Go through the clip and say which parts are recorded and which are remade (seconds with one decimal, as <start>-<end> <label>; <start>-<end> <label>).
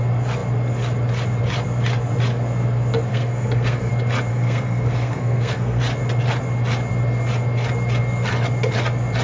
0.0-3.1 recorded; 3.1-3.9 remade; 3.9-4.3 recorded; 4.3-5.8 remade; 5.8-9.2 recorded